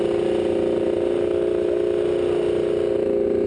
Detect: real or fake real